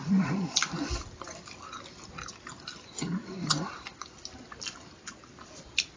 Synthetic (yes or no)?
no